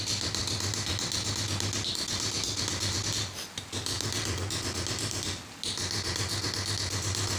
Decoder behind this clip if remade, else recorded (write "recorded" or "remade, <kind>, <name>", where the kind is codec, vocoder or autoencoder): recorded